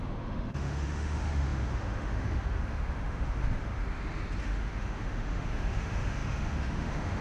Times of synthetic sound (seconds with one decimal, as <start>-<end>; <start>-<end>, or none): 0.0-3.8; 4.4-7.2